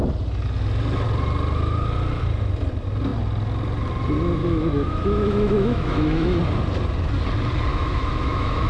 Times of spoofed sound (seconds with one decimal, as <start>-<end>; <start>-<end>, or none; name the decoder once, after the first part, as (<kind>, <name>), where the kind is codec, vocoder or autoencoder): 4.4-6.4 (autoencoder, DAC-VAE); 7.7-8.7